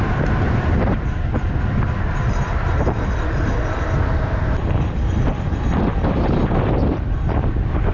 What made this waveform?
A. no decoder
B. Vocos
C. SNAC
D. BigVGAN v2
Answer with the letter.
A